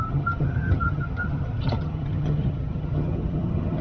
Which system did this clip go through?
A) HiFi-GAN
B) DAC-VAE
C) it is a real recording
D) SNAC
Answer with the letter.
A